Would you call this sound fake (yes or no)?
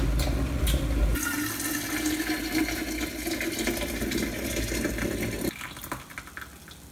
no